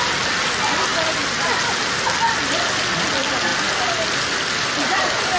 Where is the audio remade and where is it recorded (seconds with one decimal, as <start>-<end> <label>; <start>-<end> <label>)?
0.0-5.4 recorded